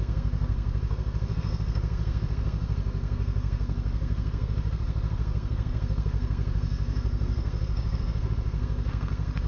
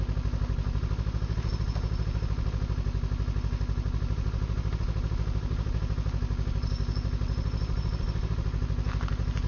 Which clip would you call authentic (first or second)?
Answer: second